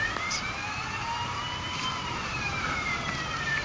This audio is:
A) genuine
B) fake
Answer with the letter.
B